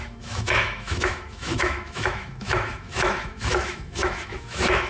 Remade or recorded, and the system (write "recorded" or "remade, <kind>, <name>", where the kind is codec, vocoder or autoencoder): remade, autoencoder, DAC-VAE